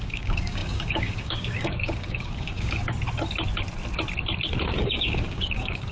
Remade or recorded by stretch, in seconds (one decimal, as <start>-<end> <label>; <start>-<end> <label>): 0.0-2.8 remade; 2.8-4.8 recorded; 4.8-5.9 remade